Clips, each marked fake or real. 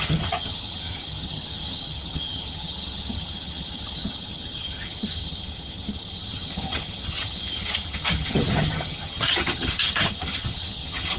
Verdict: fake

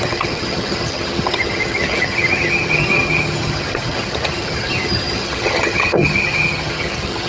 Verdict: fake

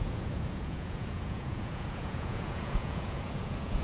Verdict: fake